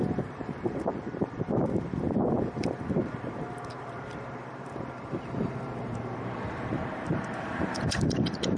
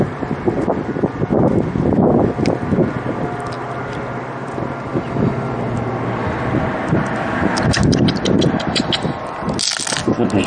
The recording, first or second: second